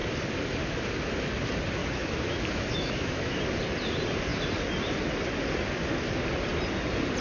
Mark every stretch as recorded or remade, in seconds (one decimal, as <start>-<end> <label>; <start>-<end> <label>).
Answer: 0.0-1.8 recorded; 1.8-3.4 remade; 3.4-7.2 recorded